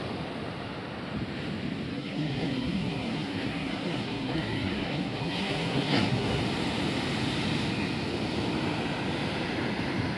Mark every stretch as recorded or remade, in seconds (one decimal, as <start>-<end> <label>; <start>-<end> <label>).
0.0-1.9 recorded; 1.9-6.4 remade; 6.4-10.2 recorded